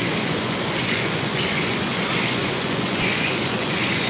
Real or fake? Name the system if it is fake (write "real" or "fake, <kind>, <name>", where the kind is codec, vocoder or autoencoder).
fake, vocoder, Vocos